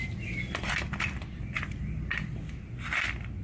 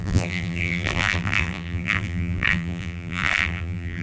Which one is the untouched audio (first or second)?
first